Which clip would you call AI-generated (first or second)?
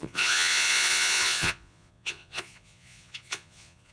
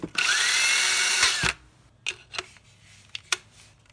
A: first